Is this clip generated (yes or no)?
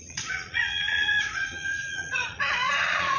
yes